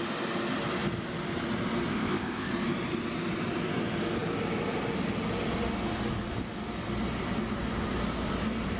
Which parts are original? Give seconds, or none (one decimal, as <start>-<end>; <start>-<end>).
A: 0.0-1.9; 2.5-8.8